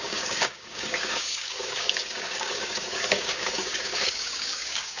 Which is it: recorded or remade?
remade